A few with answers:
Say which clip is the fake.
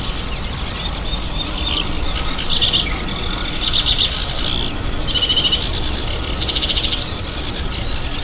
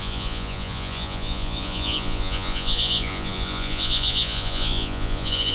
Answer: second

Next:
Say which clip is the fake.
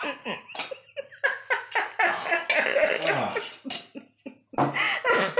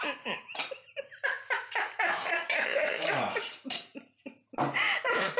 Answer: second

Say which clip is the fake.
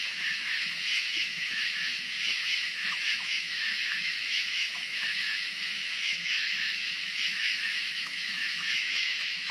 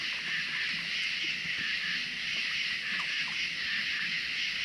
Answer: first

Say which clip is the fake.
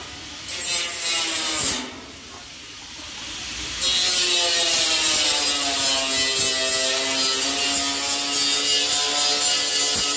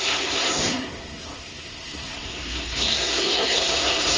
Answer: second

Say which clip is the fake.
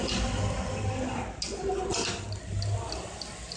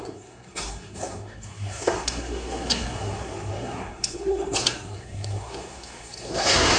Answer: second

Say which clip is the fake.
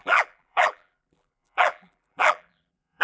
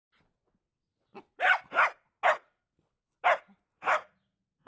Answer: first